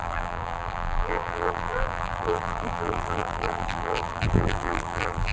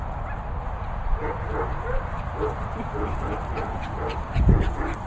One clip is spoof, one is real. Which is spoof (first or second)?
first